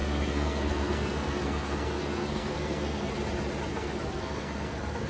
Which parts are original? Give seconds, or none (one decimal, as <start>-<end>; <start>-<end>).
3.1-3.7